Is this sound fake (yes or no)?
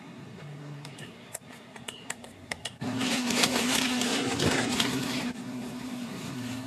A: yes